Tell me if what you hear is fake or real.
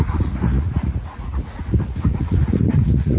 fake